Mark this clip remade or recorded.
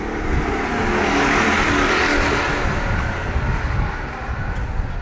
recorded